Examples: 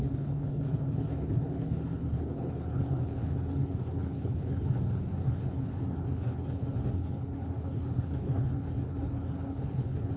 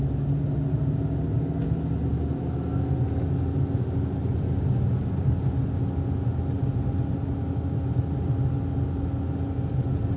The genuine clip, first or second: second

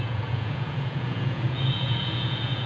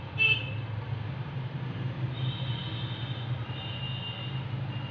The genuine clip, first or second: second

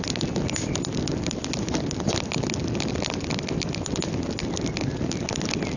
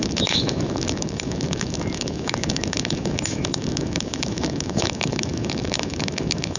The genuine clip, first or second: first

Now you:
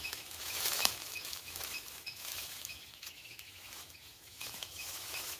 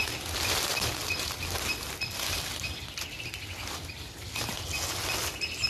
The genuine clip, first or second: second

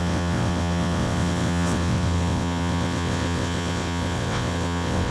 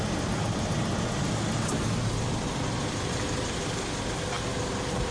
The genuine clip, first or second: second